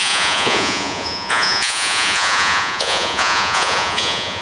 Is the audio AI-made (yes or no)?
yes